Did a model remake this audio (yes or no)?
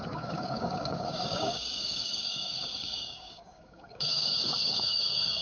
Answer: yes